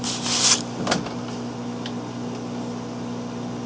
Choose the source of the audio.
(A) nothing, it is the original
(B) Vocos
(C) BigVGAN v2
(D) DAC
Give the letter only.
A